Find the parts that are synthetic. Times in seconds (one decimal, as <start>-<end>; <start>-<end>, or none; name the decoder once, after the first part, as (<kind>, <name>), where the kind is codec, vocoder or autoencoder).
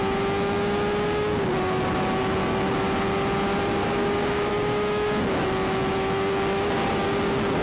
3.8-4.5 (codec, DAC)